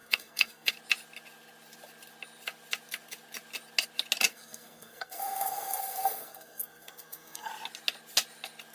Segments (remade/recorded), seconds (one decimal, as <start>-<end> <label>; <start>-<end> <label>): 0.0-0.7 remade; 0.7-4.3 recorded; 4.3-7.5 remade; 7.5-8.7 recorded